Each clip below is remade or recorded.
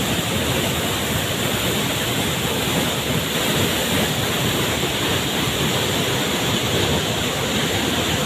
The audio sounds remade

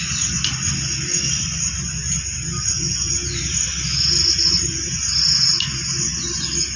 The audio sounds recorded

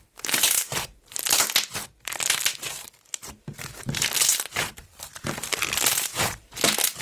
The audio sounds remade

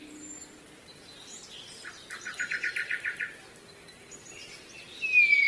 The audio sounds recorded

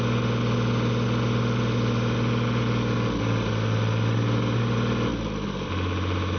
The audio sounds recorded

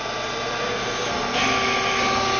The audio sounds recorded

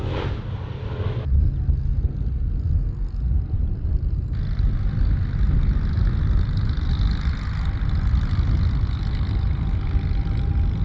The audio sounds recorded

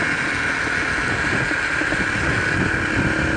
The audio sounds recorded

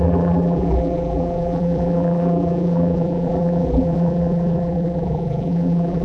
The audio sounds remade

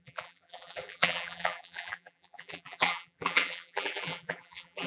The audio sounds remade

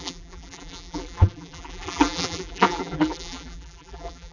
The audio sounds remade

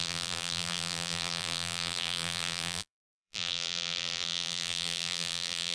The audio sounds remade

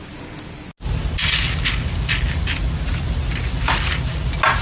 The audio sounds recorded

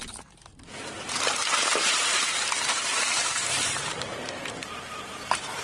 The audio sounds remade